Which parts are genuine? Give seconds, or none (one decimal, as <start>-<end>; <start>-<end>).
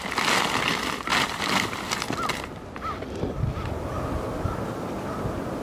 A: 0.0-5.6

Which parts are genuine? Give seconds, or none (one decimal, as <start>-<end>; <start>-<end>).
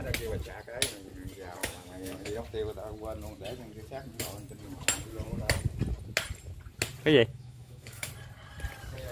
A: 0.0-1.6; 2.4-7.3; 8.1-9.1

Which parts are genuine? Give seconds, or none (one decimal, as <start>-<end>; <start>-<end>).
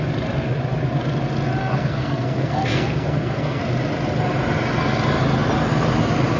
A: 0.0-1.6; 3.6-6.4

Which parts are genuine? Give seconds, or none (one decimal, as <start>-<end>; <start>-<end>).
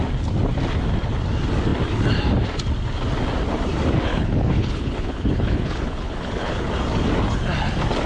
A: 0.0-4.1; 6.7-8.1